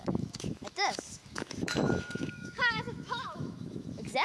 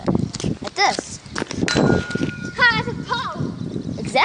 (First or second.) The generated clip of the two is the first